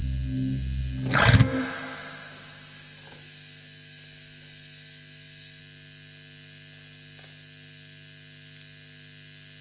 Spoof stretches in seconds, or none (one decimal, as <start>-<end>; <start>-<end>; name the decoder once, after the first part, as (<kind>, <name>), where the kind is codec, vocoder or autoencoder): 1.4-5.6 (autoencoder, DAC-VAE)